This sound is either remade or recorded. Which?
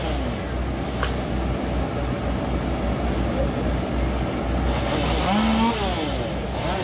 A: recorded